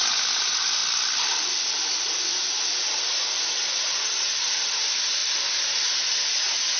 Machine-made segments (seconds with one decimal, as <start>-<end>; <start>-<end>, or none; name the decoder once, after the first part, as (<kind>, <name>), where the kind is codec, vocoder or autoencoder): 0.0-0.8 (vocoder, BigVGAN v2); 3.8-5.2; 6.2-6.8